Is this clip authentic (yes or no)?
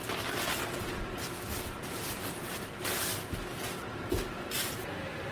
yes